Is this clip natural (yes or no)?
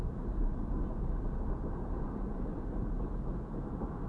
yes